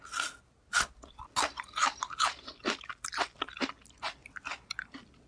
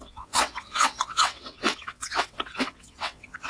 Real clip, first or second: first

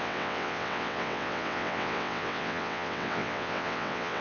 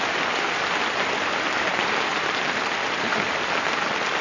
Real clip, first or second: second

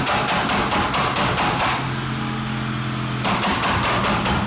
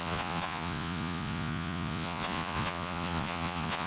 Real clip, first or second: first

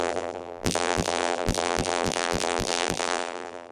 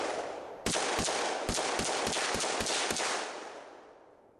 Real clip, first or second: second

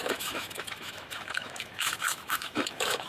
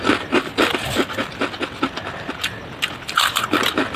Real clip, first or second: second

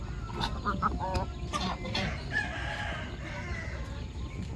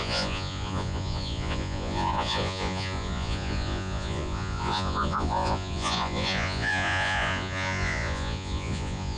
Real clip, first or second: first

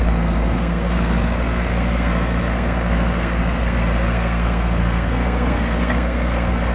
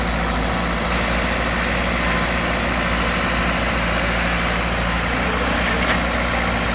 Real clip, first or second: second